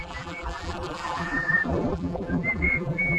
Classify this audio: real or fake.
fake